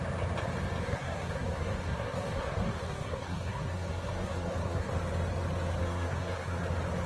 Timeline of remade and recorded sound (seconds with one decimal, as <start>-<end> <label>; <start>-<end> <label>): 0.0-0.8 recorded; 0.8-4.9 remade; 4.9-5.8 recorded; 5.8-6.6 remade; 6.6-7.1 recorded